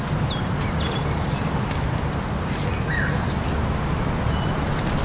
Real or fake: real